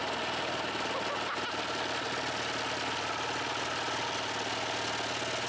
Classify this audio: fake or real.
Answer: real